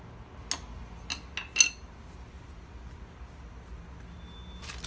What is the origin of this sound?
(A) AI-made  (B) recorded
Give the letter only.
B